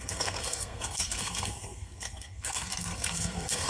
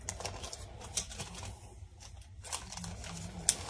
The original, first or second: second